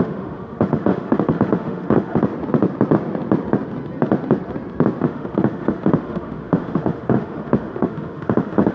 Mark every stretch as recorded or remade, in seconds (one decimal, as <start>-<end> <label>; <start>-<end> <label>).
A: 0.0-2.3 remade; 2.3-5.0 recorded; 5.0-8.7 remade